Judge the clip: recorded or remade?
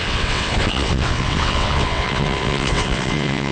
remade